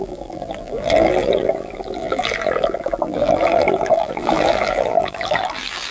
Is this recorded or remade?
remade